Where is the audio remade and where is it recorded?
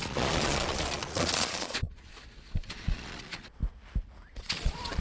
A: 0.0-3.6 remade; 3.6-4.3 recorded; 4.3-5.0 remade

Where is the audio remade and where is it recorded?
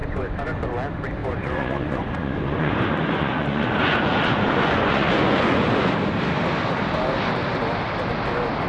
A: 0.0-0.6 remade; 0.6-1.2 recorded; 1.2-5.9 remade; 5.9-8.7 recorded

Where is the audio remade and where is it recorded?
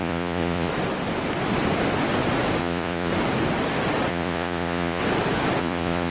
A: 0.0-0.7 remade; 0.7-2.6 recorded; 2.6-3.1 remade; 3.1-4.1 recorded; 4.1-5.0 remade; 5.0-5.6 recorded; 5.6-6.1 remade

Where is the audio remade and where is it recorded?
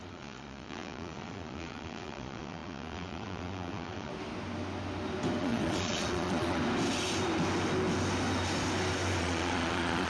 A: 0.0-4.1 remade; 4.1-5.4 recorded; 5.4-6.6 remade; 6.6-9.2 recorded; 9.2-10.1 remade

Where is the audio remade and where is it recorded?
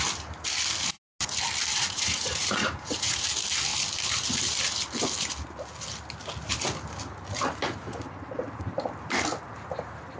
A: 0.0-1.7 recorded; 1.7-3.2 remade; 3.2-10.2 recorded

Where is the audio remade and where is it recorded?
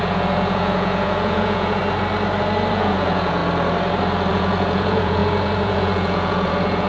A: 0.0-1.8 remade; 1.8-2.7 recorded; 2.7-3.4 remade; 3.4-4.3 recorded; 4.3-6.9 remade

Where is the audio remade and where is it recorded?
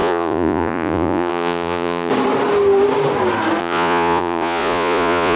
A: 0.0-2.1 remade; 2.1-3.6 recorded; 3.6-5.4 remade